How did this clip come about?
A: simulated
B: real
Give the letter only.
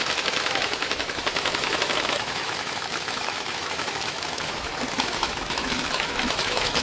A